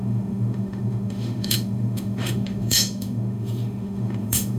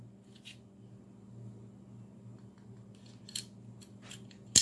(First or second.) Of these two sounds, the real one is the second